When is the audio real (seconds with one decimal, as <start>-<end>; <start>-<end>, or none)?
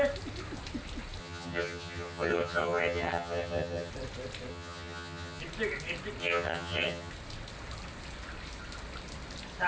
0.0-1.2; 3.9-4.5; 5.4-6.2; 7.1-9.7